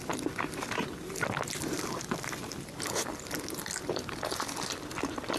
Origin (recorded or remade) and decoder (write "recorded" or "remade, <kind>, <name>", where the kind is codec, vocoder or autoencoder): recorded